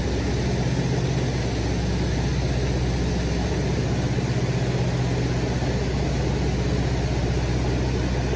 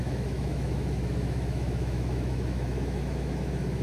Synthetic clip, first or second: second